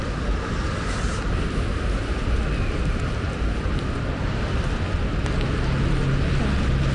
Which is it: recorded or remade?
recorded